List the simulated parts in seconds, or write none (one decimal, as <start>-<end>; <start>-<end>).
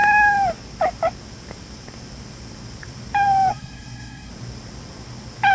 3.5-4.3